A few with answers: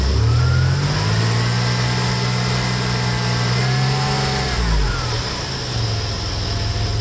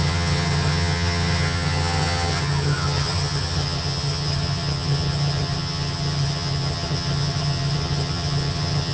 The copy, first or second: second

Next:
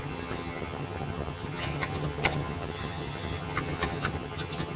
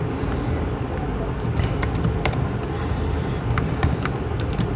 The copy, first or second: first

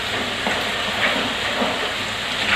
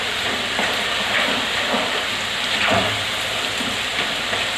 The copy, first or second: second